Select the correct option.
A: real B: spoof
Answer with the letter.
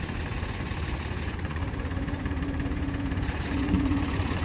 B